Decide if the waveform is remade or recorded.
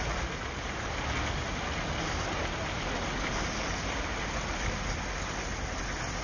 recorded